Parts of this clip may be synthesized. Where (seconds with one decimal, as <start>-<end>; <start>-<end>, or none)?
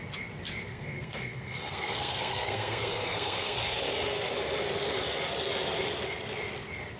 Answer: 0.7-3.6